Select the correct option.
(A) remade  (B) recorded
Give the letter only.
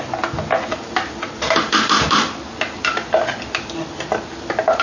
B